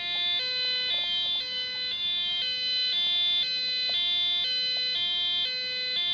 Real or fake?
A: real